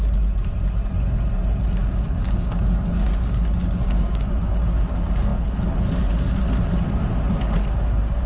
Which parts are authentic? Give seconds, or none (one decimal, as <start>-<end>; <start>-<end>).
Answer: 0.0-1.8; 4.3-8.3